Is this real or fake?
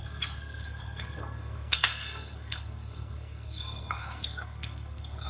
fake